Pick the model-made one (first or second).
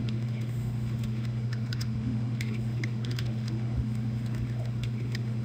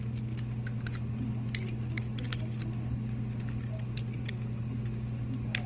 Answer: first